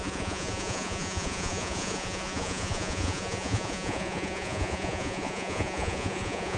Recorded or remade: remade